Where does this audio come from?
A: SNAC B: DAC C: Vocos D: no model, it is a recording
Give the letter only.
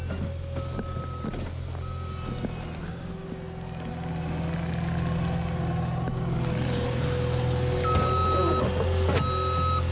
D